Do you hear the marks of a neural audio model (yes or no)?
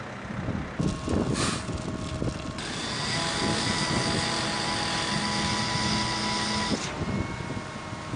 no